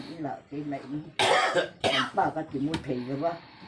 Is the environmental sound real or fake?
real